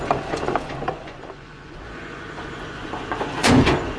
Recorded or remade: remade